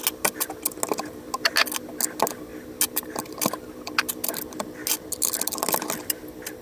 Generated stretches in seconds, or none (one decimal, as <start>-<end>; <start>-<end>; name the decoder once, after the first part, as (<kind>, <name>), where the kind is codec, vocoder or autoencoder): none